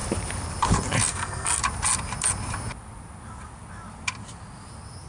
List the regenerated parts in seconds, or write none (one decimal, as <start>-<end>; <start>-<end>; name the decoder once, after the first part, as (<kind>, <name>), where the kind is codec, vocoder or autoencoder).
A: 1.1-1.6 (codec, SNAC)